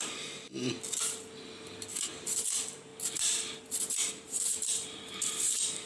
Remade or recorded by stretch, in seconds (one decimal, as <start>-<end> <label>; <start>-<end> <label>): 0.0-0.4 remade; 0.4-2.4 recorded; 2.4-2.9 remade; 2.9-4.1 recorded; 4.1-5.9 remade